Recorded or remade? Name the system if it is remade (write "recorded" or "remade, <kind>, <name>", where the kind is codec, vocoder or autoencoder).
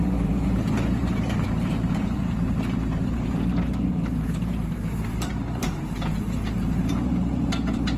remade, vocoder, BigVGAN v2